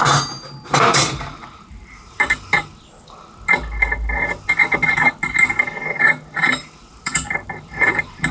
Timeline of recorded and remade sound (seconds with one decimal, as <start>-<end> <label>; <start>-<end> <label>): 0.0-2.7 remade; 2.7-6.9 recorded; 6.9-8.3 remade